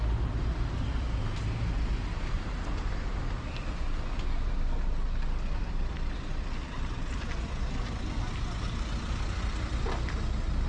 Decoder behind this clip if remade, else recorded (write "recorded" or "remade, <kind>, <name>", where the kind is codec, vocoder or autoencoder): recorded